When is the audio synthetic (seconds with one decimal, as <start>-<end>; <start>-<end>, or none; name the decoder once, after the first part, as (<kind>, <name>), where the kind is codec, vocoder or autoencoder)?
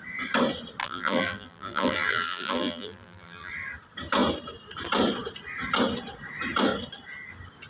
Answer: 0.8-3.5 (vocoder, BigVGAN v2)